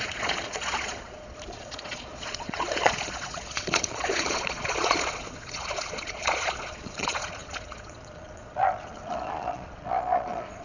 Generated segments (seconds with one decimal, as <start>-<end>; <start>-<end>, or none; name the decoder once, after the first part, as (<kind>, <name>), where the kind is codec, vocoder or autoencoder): 0.0-10.6 (vocoder, Vocos)

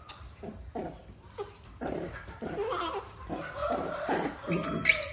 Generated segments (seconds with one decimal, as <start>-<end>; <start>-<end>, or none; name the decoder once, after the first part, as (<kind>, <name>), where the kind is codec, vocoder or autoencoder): 3.6-4.4 (vocoder, BigVGAN v2)

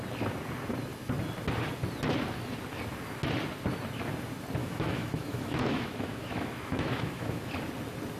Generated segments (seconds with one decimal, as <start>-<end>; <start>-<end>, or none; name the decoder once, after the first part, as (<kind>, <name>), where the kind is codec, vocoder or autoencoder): 4.6-7.5 (autoencoder, DAC-VAE)